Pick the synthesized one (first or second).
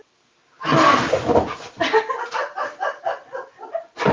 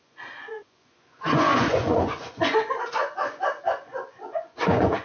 second